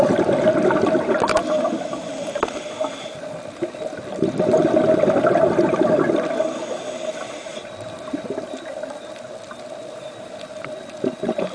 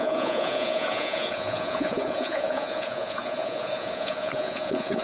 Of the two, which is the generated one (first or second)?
second